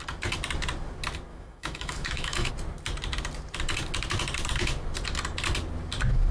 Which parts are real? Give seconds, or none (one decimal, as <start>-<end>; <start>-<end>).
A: 0.0-1.3; 2.5-6.3